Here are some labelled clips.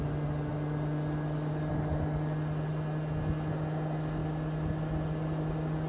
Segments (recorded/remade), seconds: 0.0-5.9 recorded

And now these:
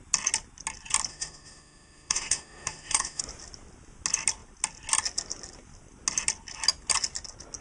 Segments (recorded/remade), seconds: 0.0-1.1 recorded; 1.1-3.2 remade; 3.2-7.6 recorded

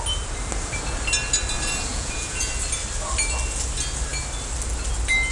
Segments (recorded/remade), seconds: 0.0-1.9 recorded; 1.9-2.5 remade; 2.5-5.3 recorded

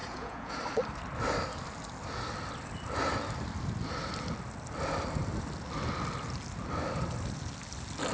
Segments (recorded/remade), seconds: 0.0-0.5 remade; 0.5-8.1 recorded

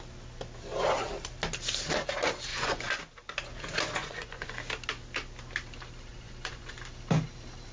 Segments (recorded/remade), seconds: 0.0-2.5 recorded; 2.5-3.0 remade; 3.0-4.0 recorded; 4.0-4.6 remade; 4.6-6.1 recorded; 6.1-6.7 remade; 6.7-7.7 recorded